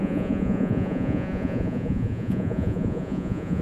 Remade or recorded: remade